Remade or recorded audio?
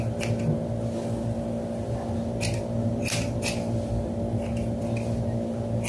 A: recorded